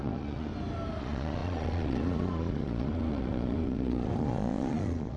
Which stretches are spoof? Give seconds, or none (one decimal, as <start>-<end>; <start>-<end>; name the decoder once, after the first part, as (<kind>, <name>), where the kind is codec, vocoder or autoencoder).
0.0-0.5 (vocoder, Vocos); 1.0-5.2